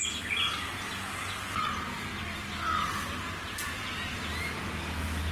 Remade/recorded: recorded